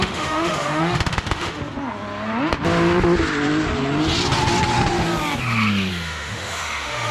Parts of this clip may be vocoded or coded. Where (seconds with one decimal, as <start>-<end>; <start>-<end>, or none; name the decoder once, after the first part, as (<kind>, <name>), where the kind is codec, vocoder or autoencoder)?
0.0-1.6 (autoencoder, DAC-VAE); 5.9-7.1